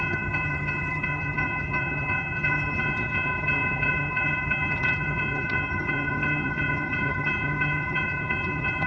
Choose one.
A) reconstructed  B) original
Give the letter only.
A